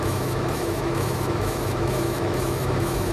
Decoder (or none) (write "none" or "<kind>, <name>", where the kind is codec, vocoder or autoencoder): autoencoder, DAC-VAE